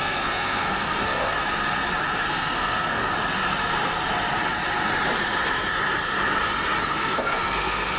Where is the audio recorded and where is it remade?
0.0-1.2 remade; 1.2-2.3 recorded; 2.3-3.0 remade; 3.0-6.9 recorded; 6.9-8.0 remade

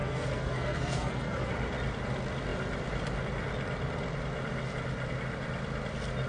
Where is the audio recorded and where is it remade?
0.0-1.5 remade; 1.5-6.3 recorded

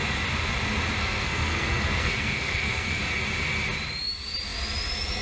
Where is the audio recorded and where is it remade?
0.0-1.0 recorded; 1.0-3.0 remade; 3.0-5.2 recorded

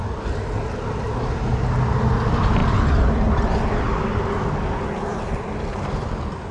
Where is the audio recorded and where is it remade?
0.0-6.5 recorded

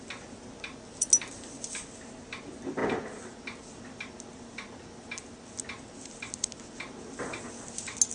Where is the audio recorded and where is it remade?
0.0-8.1 recorded

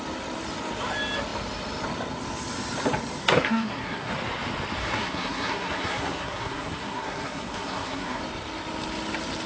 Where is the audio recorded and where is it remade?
0.0-3.2 recorded; 3.2-4.1 remade; 4.1-4.8 recorded; 4.8-8.2 remade; 8.2-9.5 recorded

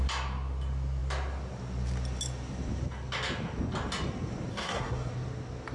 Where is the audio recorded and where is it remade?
0.0-4.5 recorded; 4.5-5.1 remade; 5.1-5.7 recorded